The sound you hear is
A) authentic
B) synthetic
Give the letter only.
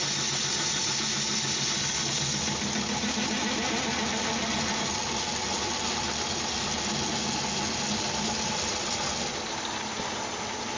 A